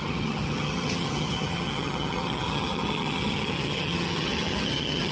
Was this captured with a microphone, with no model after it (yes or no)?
no